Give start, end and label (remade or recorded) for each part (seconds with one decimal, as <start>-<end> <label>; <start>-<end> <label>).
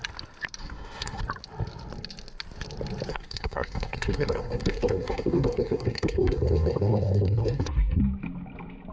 0.0-0.6 recorded; 0.6-1.2 remade; 1.2-3.1 recorded; 3.1-8.0 remade; 8.0-8.9 recorded